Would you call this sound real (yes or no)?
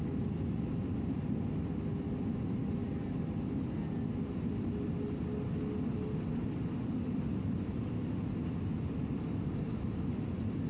yes